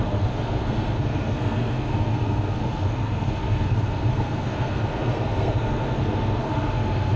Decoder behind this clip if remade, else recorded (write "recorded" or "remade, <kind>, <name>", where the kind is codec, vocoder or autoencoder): remade, codec, SNAC